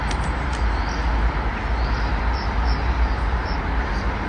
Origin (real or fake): real